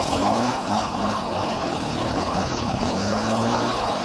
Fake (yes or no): yes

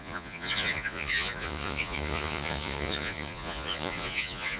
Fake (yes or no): yes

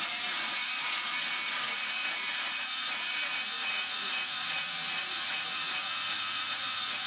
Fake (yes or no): yes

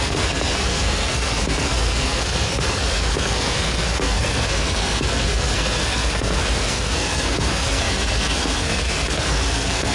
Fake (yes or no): yes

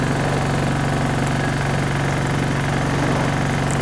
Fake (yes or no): no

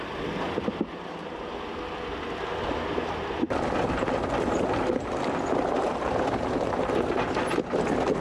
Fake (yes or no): no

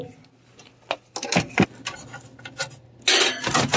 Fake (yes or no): no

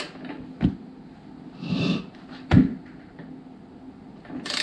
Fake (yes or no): no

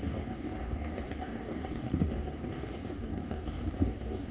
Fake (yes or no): yes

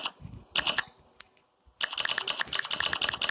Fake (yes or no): no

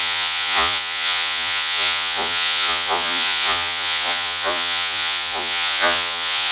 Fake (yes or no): yes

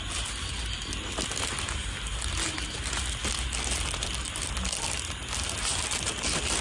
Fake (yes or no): no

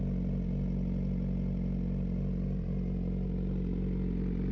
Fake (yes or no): no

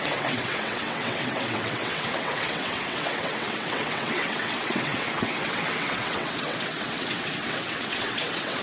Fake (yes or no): yes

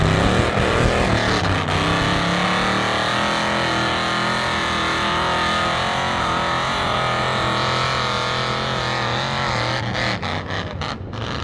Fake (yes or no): no